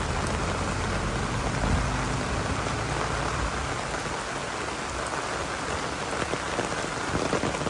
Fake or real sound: real